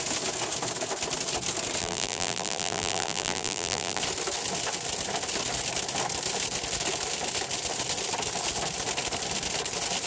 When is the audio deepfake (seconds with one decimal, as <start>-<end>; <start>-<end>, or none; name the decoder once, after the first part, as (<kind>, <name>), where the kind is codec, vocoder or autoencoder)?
1.8-4.0 (vocoder, BigVGAN v2)

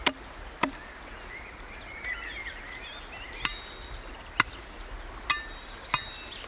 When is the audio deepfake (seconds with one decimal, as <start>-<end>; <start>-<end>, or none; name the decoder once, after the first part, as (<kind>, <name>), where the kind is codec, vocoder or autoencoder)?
none

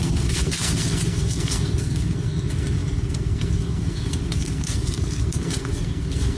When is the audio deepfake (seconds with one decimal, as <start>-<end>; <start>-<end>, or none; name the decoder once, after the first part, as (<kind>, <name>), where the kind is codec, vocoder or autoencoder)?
0.0-6.4 (codec, SNAC)